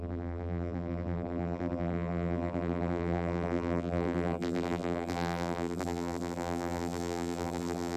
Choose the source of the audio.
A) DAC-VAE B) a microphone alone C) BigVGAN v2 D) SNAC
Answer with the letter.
C